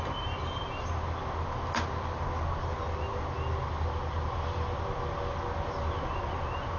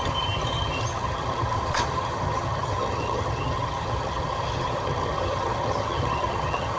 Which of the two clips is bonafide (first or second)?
first